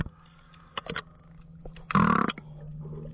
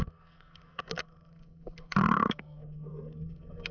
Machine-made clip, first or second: second